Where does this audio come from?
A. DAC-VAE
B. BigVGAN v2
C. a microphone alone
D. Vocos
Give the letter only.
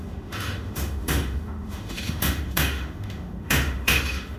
A